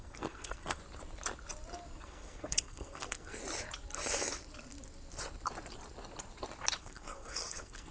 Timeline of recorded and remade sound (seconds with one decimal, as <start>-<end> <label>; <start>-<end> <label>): 0.0-0.8 remade; 0.8-2.0 recorded; 2.0-3.4 remade; 3.4-6.8 recorded; 6.8-7.9 remade

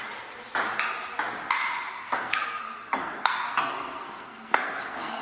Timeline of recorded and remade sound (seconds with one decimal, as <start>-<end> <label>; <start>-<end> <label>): 0.0-1.9 recorded; 1.9-5.2 remade

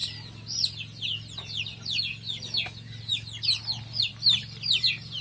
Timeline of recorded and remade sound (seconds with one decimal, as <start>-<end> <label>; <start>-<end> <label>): 0.0-5.2 recorded

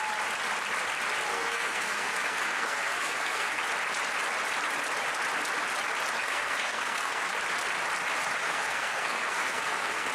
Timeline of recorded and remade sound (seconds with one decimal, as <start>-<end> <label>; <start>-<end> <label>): 0.0-1.3 recorded; 1.3-3.6 remade; 3.6-6.2 recorded; 6.2-7.3 remade; 7.3-8.4 recorded; 8.4-10.1 remade

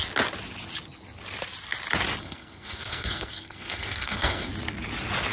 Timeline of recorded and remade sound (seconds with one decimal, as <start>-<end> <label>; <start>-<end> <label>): 0.0-2.2 recorded; 2.2-4.5 remade; 4.5-5.3 recorded

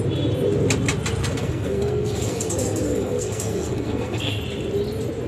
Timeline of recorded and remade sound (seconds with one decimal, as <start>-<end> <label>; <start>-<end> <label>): 0.0-1.2 recorded; 1.2-4.4 remade; 4.4-5.3 recorded

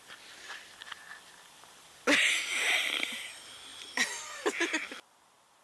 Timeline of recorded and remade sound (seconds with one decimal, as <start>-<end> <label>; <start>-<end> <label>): 0.0-5.6 recorded